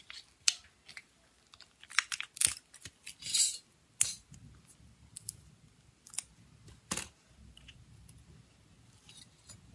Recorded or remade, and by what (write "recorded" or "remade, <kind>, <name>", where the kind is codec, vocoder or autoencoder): recorded